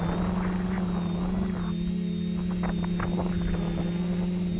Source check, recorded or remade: recorded